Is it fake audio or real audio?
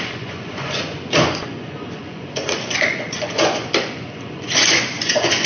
fake